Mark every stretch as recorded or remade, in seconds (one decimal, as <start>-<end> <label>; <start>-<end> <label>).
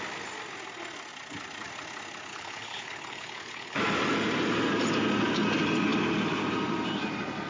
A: 0.0-2.3 recorded; 2.3-3.8 remade; 3.8-7.5 recorded